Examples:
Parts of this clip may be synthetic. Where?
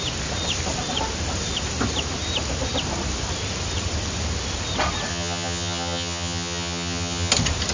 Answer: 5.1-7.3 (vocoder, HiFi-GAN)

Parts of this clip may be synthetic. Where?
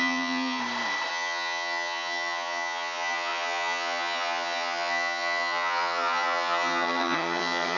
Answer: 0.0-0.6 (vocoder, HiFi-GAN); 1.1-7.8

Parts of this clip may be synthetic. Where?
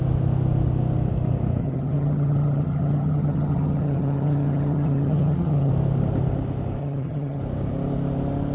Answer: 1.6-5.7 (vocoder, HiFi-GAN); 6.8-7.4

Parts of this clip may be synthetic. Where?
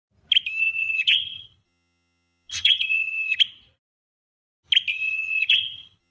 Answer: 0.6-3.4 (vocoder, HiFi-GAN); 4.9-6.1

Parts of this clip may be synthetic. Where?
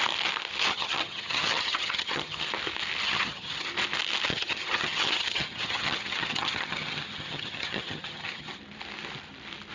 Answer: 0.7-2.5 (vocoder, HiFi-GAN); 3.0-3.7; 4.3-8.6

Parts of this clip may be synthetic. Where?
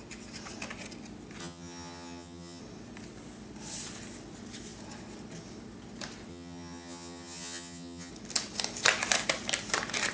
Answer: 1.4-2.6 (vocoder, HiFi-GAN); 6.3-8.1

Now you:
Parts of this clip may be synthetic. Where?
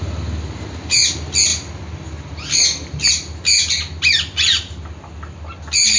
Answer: none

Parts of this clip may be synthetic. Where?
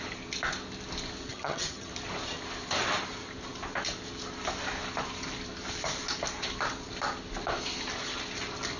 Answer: 1.3-1.9 (vocoder, HiFi-GAN)